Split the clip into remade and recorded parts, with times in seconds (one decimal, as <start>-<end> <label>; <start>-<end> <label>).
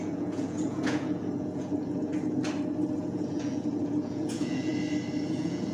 0.0-2.1 remade; 2.1-3.0 recorded; 3.0-4.7 remade; 4.7-5.3 recorded; 5.3-5.7 remade